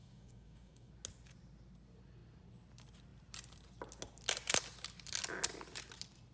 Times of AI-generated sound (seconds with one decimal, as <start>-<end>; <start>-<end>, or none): 0.0-0.9